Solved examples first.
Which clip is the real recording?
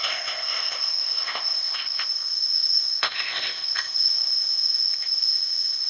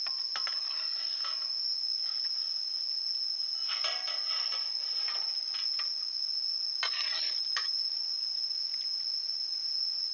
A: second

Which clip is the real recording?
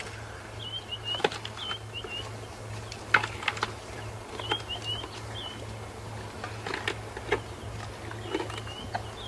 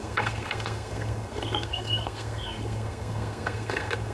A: first